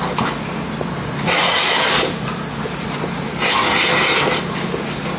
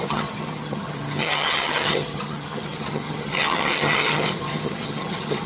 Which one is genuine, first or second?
first